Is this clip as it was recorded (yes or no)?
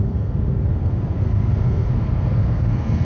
no